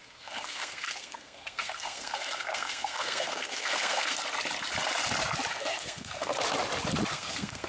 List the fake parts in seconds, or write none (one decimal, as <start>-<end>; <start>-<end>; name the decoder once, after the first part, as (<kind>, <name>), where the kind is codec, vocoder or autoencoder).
0.0-4.2 (codec, SNAC); 5.5-6.3; 7.1-7.7